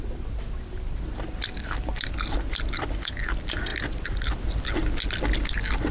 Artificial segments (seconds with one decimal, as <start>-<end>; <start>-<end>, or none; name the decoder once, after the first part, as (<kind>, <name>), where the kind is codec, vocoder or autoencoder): none